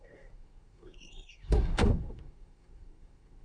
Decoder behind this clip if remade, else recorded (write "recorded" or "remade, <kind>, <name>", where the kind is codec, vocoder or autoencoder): remade, codec, SNAC